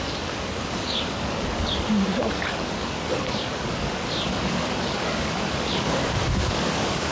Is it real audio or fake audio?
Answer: fake